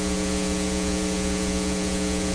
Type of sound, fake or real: fake